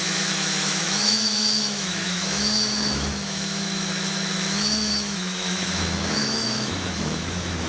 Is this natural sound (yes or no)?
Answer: no